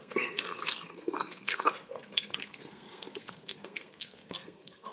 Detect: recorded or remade remade